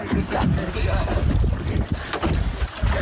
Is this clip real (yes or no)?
yes